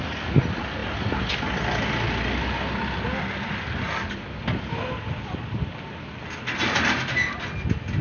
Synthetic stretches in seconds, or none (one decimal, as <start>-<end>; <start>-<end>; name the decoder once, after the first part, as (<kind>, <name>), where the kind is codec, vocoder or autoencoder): none